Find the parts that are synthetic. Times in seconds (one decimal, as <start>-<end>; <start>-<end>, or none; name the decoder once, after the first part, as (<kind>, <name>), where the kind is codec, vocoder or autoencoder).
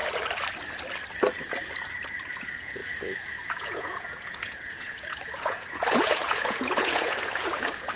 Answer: 2.3-2.8 (vocoder, Vocos); 3.5-8.0